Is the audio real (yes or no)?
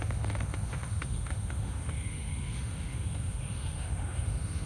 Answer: no